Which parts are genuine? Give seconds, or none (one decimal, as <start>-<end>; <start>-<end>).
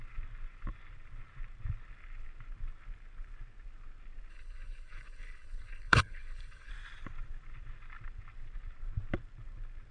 0.0-4.3; 6.7-9.9